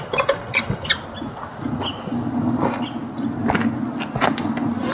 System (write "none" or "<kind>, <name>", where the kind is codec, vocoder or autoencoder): none